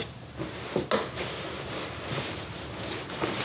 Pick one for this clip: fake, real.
real